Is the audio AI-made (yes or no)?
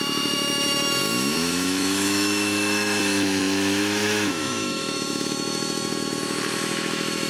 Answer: yes